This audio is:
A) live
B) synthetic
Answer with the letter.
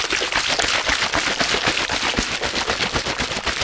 A